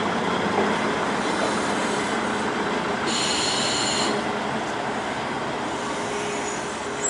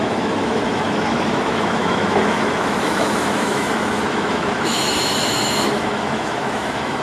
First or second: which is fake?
second